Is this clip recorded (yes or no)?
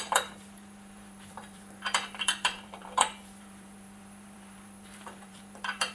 no